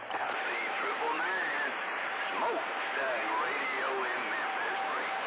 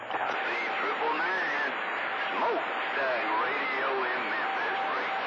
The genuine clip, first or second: second